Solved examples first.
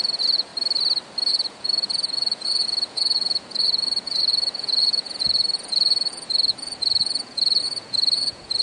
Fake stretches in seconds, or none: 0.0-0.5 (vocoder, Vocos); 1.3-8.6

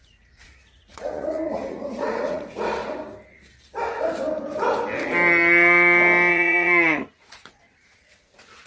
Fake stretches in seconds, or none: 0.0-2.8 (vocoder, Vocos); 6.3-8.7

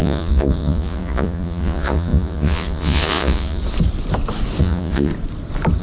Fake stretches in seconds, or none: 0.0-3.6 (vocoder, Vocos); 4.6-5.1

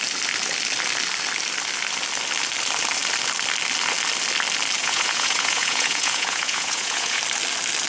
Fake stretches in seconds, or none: 4.8-7.2 (vocoder, Vocos)

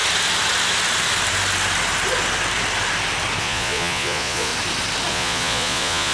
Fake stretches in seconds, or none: 3.4-4.5 (vocoder, Vocos); 5.1-6.1

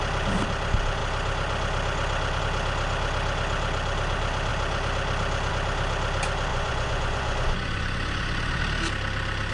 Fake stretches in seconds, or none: 6.5-8.6 (vocoder, Vocos)

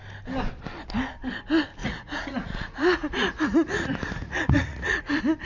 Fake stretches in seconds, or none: 1.8-5.1 (vocoder, Vocos)